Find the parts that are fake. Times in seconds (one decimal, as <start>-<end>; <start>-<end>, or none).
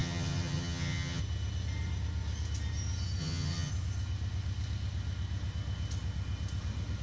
0.0-1.2; 3.2-3.7